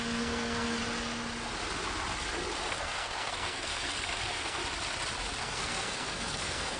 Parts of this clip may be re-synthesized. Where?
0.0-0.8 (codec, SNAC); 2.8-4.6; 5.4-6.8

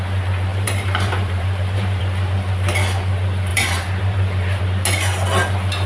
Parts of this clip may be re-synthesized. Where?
0.5-2.0 (vocoder, BigVGAN v2); 3.5-4.6

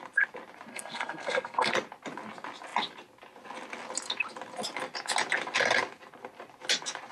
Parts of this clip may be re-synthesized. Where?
0.7-1.7 (codec, SNAC)

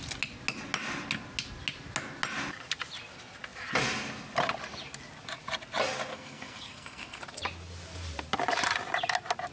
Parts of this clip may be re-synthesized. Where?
6.1-7.2 (codec, SNAC)